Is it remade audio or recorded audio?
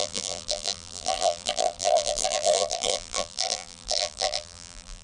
remade